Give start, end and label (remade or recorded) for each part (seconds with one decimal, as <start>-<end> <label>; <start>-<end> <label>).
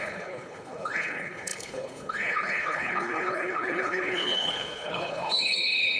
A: 0.0-6.0 remade